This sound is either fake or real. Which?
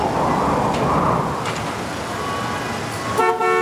real